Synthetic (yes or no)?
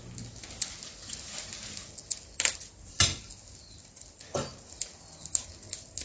no